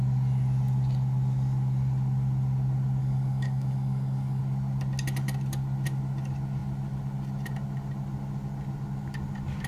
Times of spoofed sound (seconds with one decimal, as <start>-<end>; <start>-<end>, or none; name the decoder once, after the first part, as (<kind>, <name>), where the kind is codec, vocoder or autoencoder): 3.0-4.4 (codec, DAC)